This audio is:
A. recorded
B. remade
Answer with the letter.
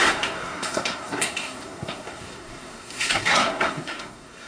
B